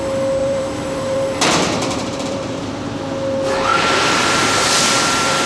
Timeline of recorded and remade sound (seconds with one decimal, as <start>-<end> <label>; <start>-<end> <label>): 0.0-0.4 recorded; 0.4-2.8 remade; 2.8-3.7 recorded; 3.7-5.5 remade